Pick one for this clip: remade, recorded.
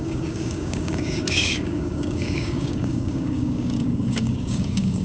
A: remade